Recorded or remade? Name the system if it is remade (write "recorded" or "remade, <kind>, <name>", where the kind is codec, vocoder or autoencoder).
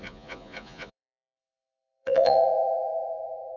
remade, vocoder, Vocos